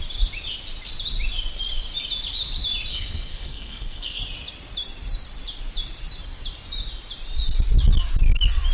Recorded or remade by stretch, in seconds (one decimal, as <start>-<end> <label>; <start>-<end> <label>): 0.0-2.9 recorded; 2.9-4.2 remade; 4.2-8.7 recorded